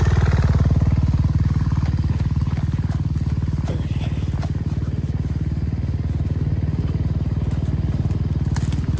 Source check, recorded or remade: recorded